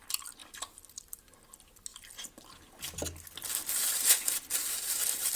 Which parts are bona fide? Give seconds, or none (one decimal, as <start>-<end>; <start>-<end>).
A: 0.0-0.4; 1.4-5.4